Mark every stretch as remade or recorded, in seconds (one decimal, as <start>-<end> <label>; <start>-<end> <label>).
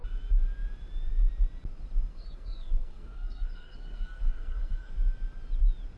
0.0-2.1 recorded; 2.1-4.9 remade; 4.9-6.0 recorded